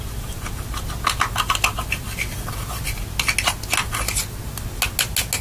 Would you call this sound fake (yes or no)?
no